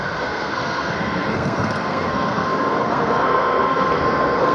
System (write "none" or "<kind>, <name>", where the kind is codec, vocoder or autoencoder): codec, SNAC